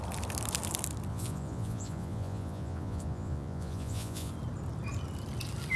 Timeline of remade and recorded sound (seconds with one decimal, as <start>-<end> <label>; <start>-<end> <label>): 0.0-1.1 recorded; 1.1-4.3 remade; 4.3-5.8 recorded